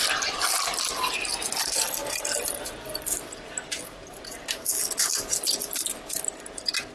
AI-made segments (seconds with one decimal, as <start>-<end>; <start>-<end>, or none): none